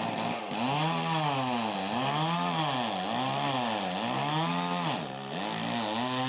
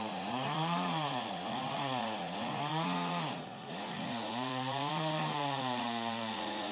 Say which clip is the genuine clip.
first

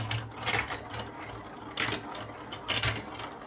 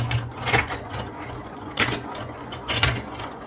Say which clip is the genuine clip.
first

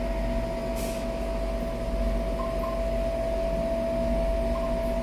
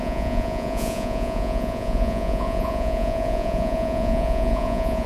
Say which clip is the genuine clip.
first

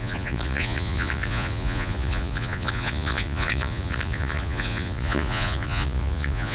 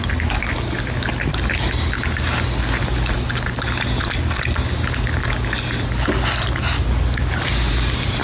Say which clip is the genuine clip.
second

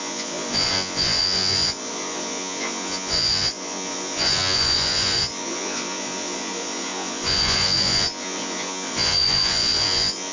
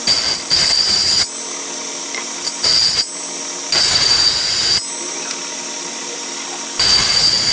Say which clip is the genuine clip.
second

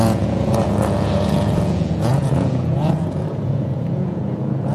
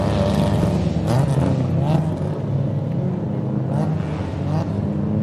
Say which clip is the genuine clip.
second